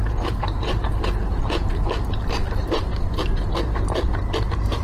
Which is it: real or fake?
fake